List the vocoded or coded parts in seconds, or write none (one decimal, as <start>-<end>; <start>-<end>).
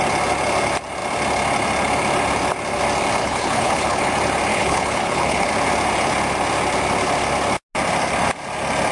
3.2-4.0; 4.5-5.5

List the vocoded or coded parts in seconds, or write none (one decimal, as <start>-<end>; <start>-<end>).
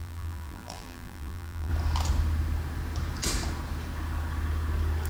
0.0-1.7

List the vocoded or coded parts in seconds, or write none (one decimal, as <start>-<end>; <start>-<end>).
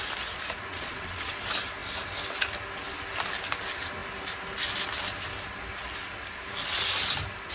0.7-1.3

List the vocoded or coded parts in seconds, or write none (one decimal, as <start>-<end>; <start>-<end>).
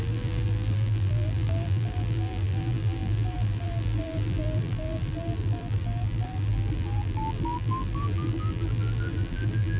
0.0-9.8